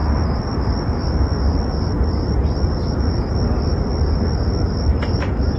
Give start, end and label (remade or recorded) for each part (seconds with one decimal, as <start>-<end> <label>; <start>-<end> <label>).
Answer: 0.0-4.9 recorded; 4.9-5.6 remade